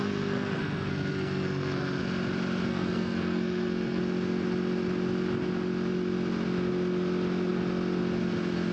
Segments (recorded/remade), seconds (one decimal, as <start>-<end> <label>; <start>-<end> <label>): 0.0-2.0 remade; 2.0-2.7 recorded; 2.7-4.0 remade; 4.0-8.7 recorded